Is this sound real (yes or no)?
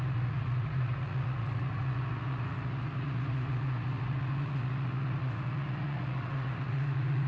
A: no